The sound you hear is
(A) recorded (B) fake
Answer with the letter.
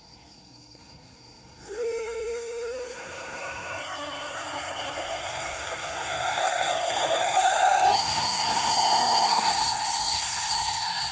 B